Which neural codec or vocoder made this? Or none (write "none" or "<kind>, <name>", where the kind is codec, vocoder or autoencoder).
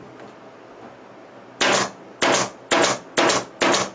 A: none